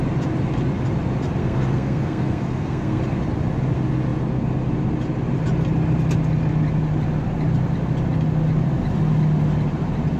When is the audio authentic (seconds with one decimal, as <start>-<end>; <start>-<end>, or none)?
0.0-1.4; 3.0-10.2